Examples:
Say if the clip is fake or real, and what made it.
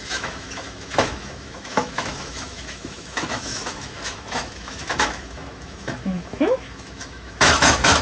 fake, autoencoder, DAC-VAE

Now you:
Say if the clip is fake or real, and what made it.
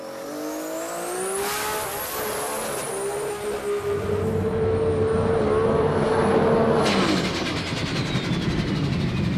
real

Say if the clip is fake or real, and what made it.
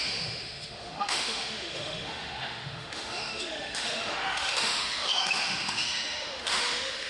fake, autoencoder, DAC-VAE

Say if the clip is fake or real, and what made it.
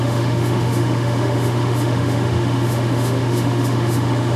fake, autoencoder, DAC-VAE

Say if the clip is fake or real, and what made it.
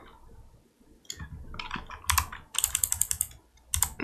real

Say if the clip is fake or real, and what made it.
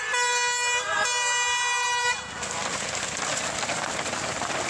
real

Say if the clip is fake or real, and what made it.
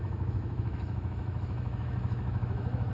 fake, autoencoder, DAC-VAE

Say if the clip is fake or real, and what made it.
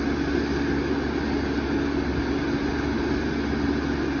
real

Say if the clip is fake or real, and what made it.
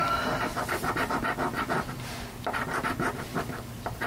real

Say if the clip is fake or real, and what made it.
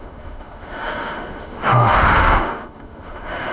fake, autoencoder, DAC-VAE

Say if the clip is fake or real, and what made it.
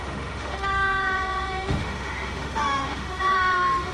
fake, autoencoder, DAC-VAE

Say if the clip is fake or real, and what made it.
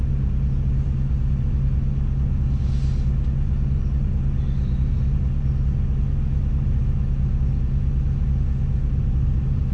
real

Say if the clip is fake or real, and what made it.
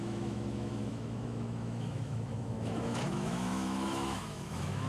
fake, autoencoder, DAC-VAE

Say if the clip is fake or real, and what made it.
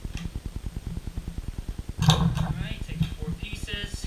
real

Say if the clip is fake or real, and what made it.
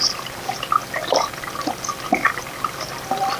real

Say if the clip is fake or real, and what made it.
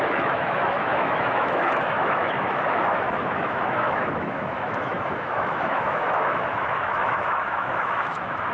fake, autoencoder, DAC-VAE